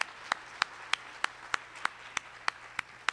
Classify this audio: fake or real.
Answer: real